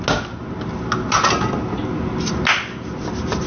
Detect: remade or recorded recorded